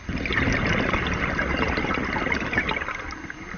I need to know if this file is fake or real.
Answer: real